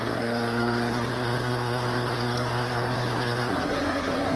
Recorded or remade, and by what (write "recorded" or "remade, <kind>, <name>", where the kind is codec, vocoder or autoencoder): remade, codec, SNAC